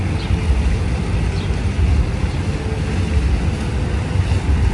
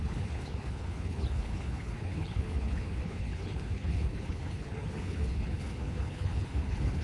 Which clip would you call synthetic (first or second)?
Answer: second